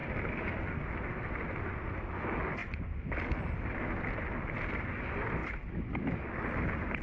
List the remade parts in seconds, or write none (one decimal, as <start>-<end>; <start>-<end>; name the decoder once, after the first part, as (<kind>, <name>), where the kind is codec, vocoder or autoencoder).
none